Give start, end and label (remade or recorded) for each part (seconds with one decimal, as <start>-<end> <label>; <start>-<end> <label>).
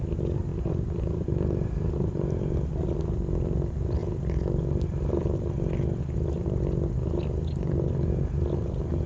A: 0.0-0.5 recorded; 0.5-3.0 remade; 3.0-9.1 recorded